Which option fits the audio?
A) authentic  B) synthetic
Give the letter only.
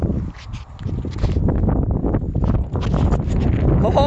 A